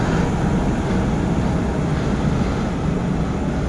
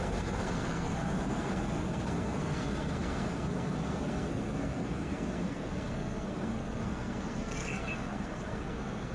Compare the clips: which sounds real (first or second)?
first